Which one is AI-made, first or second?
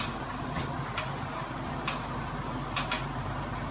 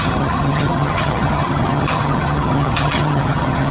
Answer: second